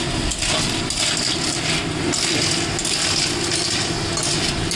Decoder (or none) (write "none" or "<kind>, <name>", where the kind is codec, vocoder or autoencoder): none